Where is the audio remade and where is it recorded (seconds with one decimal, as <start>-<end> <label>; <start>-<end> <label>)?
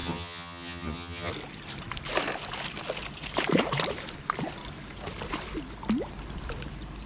0.0-1.3 remade; 1.3-7.1 recorded